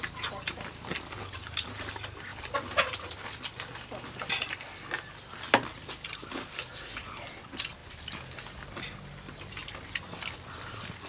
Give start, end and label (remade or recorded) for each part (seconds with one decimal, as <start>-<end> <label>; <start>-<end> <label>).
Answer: 0.0-11.1 recorded